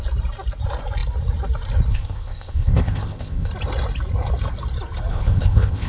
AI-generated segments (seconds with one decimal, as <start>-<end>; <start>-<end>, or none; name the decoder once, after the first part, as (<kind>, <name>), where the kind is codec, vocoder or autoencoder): 1.9-3.5 (codec, ZipCodec); 5.1-5.9

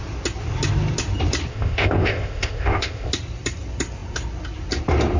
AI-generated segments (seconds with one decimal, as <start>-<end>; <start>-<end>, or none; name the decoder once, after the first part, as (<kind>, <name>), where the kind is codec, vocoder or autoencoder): 1.5-3.1 (codec, ZipCodec)

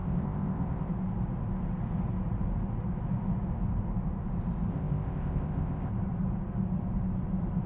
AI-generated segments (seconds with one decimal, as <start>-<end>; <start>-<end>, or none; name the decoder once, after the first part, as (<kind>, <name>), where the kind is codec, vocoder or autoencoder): 0.0-0.9 (codec, ZipCodec); 4.7-5.9

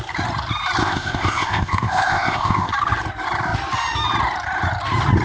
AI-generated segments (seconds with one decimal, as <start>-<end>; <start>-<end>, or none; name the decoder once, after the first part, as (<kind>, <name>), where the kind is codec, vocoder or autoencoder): 0.8-2.7 (codec, ZipCodec)

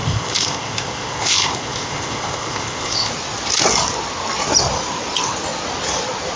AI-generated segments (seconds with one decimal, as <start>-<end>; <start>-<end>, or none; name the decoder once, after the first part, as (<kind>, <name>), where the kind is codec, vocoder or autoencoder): 0.0-3.1 (codec, ZipCodec)

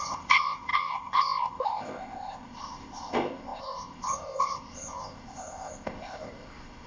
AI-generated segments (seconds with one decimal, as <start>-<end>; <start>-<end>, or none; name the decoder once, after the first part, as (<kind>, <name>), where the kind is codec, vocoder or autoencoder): 0.0-6.9 (codec, ZipCodec)